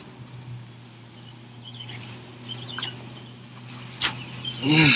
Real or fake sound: real